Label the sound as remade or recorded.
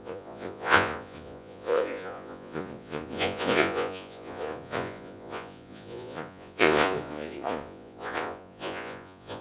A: remade